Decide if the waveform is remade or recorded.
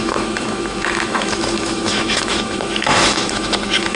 remade